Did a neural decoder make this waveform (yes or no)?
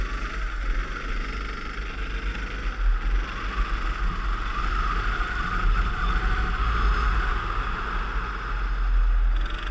no